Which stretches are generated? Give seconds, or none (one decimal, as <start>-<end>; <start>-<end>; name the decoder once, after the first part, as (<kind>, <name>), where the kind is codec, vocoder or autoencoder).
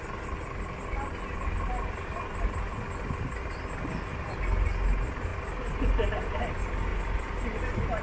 none